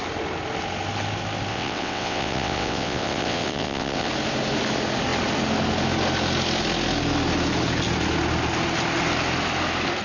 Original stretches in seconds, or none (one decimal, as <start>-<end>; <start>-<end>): 0.0-1.5; 4.1-10.0